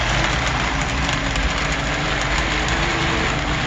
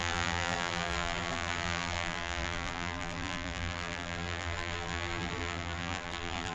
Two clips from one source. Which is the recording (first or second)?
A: first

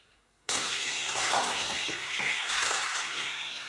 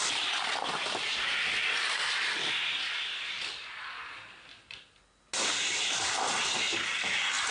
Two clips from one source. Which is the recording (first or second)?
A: second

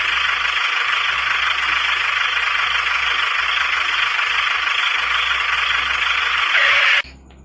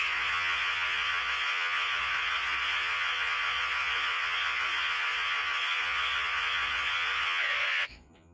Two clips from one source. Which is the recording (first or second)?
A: first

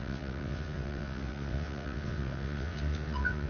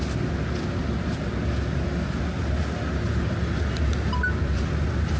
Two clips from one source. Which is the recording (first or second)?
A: second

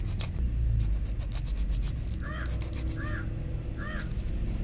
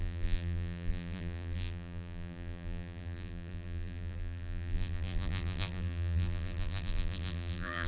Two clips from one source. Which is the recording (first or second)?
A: first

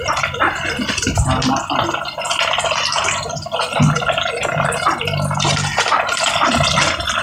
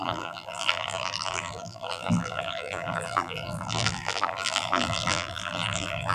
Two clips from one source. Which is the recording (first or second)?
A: first